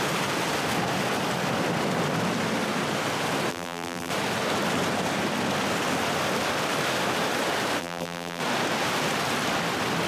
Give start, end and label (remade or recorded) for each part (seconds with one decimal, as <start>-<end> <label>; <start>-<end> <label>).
0.0-3.5 recorded; 3.5-4.1 remade; 4.1-7.8 recorded; 7.8-8.4 remade; 8.4-10.1 recorded